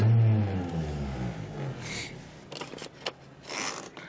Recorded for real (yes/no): yes